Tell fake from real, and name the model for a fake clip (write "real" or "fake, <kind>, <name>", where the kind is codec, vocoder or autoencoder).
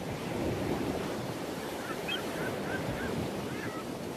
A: fake, vocoder, BigVGAN v2